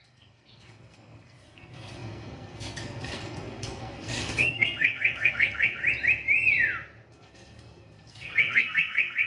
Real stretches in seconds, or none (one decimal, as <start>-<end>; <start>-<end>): 5.8-7.1